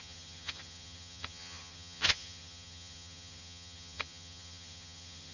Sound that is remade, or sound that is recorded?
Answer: remade